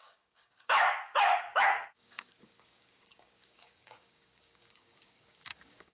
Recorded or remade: remade